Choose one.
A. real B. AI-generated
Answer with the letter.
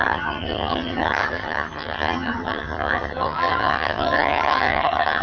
B